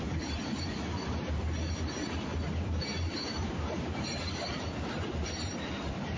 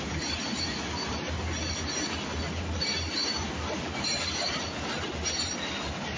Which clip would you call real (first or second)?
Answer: second